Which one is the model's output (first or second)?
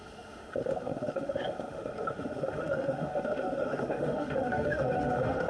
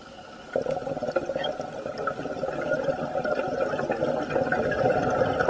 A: first